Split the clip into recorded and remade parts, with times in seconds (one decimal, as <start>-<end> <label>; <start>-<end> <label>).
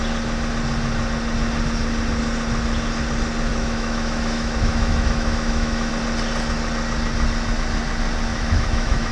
0.0-3.5 recorded; 3.5-5.9 remade; 5.9-8.3 recorded; 8.3-9.1 remade